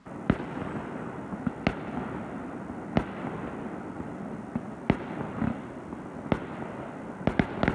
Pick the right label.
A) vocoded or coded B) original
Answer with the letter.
B